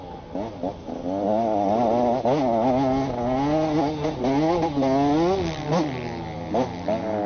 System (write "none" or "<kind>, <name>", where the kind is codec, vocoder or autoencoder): none